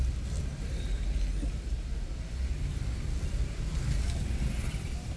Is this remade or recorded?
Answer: recorded